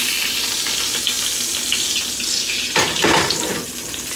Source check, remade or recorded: recorded